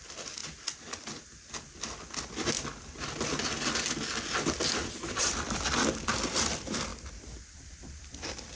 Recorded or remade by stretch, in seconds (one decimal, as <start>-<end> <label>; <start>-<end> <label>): 0.0-4.8 recorded; 4.8-5.3 remade; 5.3-8.6 recorded